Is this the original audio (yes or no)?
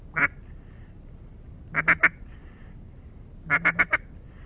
yes